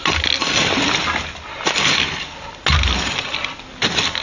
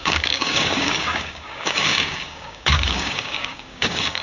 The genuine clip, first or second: first